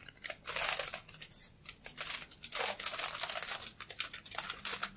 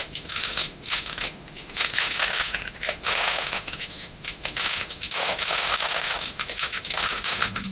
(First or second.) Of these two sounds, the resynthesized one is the second